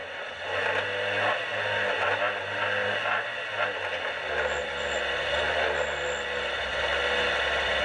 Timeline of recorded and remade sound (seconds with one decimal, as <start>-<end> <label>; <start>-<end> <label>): 0.0-7.8 recorded